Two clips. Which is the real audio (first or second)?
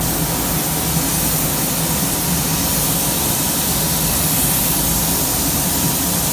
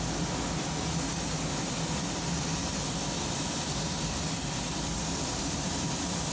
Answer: first